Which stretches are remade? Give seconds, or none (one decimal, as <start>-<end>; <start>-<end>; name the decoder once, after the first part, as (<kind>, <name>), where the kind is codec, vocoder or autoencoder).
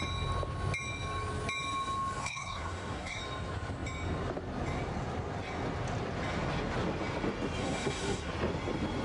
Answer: 2.2-3.2 (codec, SNAC); 7.6-8.3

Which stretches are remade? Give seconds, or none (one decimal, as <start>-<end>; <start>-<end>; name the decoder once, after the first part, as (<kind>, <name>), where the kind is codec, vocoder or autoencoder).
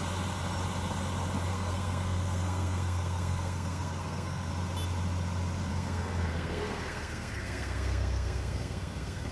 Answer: 1.5-4.5 (codec, SNAC); 5.7-9.3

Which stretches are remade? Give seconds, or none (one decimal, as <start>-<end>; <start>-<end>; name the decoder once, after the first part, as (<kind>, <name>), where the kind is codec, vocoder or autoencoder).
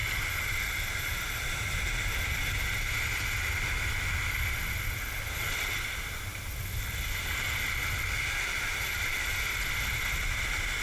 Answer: none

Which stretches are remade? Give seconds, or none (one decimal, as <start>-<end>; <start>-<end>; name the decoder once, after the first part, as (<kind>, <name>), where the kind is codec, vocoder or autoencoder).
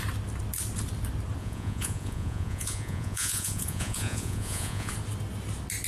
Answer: 1.4-4.9 (vocoder, Vocos)